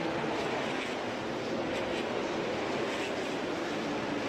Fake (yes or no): no